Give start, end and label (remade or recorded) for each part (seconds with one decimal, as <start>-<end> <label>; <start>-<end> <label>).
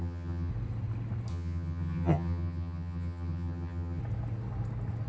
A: 0.0-0.5 remade; 0.5-1.3 recorded; 1.3-4.0 remade; 4.0-5.1 recorded